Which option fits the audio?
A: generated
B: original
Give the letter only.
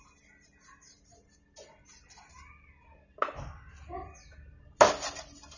B